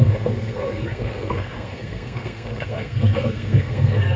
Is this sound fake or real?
fake